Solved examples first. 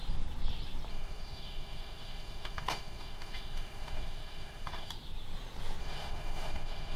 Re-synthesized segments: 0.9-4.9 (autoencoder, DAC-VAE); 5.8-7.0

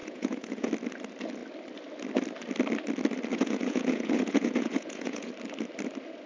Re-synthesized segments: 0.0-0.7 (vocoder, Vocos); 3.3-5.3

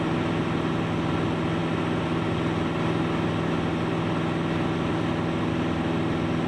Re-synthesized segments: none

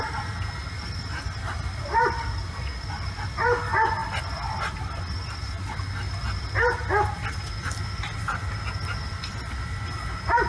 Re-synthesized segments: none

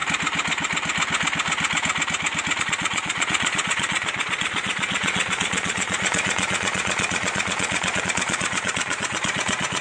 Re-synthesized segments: 2.6-9.8 (vocoder, Vocos)

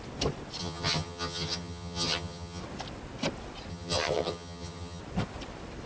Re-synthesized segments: 0.6-2.6 (vocoder, HiFi-GAN); 3.7-5.0